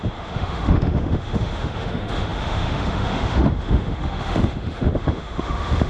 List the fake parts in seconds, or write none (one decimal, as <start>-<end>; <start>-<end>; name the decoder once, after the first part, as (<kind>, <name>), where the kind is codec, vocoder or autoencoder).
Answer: 0.0-5.9 (autoencoder, DAC-VAE)